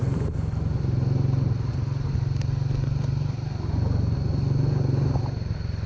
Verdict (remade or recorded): recorded